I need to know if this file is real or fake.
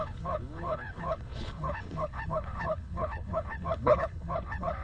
fake